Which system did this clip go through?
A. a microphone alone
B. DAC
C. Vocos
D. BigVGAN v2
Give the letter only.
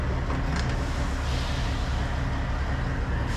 A